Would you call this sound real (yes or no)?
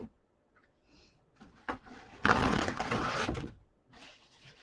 no